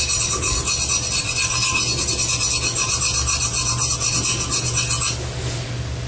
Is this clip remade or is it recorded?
recorded